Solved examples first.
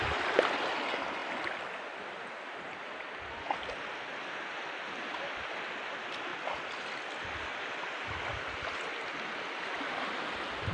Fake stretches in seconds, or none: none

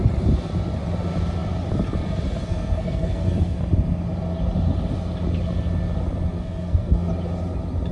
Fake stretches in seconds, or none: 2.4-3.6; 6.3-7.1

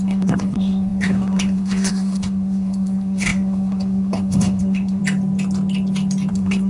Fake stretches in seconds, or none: 0.0-5.0; 6.3-6.7

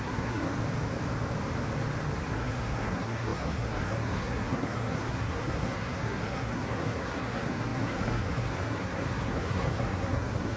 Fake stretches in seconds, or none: 0.0-0.5; 2.3-10.6

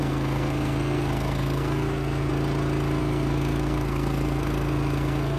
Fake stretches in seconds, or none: 0.0-2.3; 3.0-5.4

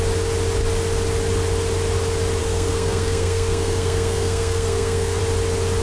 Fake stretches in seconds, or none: 2.4-5.2

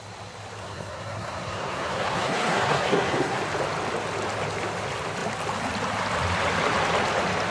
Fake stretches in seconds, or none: 0.6-3.4

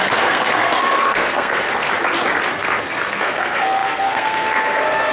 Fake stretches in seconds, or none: 0.0-1.9; 2.5-5.1